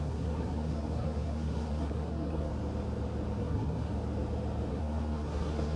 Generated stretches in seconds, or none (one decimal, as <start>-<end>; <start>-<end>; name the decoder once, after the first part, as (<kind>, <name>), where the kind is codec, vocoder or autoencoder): 0.0-2.5 (codec, SNAC); 3.4-3.9; 4.7-5.8